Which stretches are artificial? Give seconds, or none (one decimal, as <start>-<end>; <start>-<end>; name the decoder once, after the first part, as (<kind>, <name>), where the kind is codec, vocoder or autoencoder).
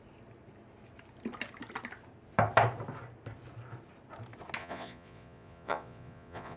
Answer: 4.6-6.6 (vocoder, Vocos)